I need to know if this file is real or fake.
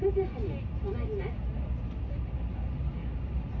real